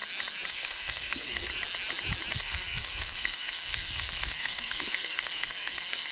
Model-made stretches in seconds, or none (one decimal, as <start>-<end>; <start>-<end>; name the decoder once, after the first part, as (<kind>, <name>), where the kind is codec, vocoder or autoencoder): 0.5-1.5 (codec, SNAC); 2.3-6.1